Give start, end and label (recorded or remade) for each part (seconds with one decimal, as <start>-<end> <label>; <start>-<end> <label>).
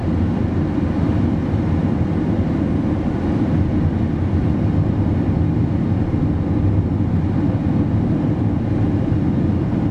0.0-9.9 recorded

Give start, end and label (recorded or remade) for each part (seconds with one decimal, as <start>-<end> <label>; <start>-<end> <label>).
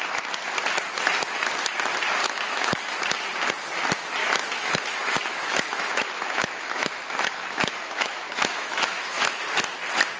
0.0-2.2 recorded; 2.2-3.0 remade; 3.0-4.2 recorded; 4.2-9.4 remade; 9.4-10.2 recorded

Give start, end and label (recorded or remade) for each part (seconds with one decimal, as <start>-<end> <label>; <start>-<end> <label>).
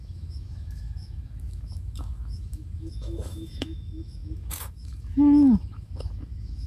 0.0-6.7 remade